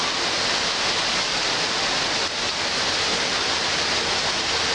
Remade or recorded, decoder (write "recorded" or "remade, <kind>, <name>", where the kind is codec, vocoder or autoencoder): recorded